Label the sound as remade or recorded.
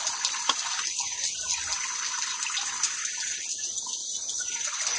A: recorded